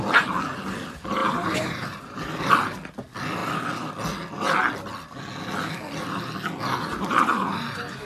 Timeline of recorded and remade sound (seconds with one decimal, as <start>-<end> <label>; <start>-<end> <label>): 0.0-1.2 recorded; 1.2-2.5 remade; 2.5-7.3 recorded; 7.3-8.1 remade